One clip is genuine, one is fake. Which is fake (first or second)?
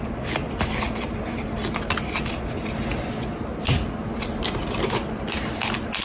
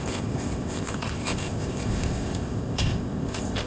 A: second